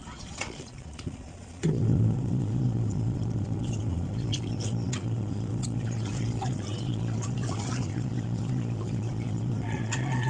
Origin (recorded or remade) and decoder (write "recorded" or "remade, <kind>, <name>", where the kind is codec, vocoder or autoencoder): remade, vocoder, Vocos